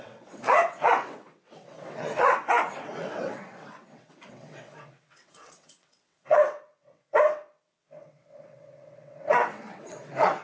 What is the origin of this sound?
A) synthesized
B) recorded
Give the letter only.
A